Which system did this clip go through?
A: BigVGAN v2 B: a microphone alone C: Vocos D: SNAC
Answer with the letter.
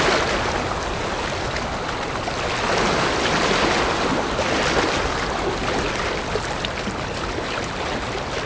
B